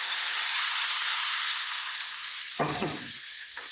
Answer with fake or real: fake